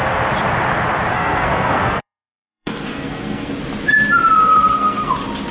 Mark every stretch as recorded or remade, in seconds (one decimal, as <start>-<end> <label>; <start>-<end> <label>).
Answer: 0.0-1.1 recorded; 1.1-3.5 remade; 3.5-4.4 recorded; 4.4-5.1 remade; 5.1-5.5 recorded